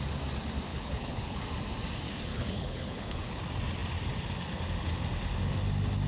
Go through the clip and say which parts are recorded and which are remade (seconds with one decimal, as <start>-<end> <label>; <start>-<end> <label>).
0.0-0.7 recorded; 0.7-1.4 remade; 1.4-2.3 recorded; 2.3-3.4 remade; 3.4-6.1 recorded